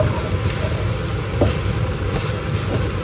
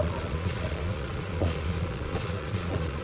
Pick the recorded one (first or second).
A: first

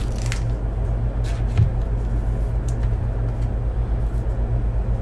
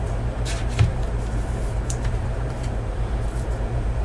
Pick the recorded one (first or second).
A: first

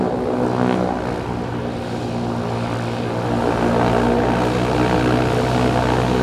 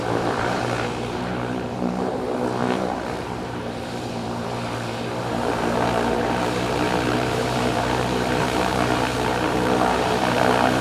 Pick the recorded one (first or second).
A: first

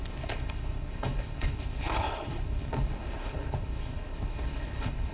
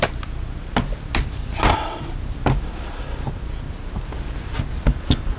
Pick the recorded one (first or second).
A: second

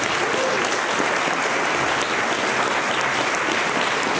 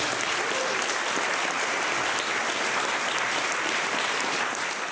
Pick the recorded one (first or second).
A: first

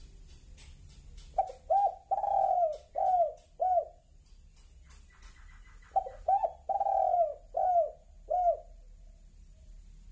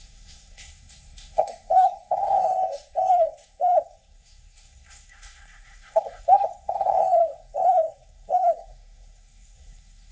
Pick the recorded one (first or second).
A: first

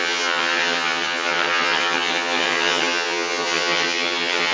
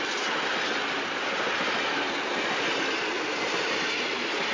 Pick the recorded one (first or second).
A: second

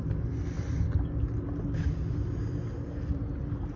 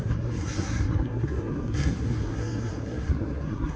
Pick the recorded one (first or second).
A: first